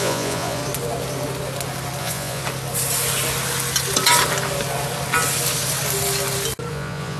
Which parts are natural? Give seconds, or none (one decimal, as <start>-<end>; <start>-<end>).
0.6-2.0; 2.4-6.7